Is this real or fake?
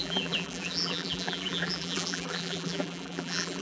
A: fake